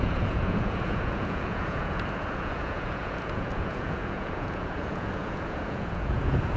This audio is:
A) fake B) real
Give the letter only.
A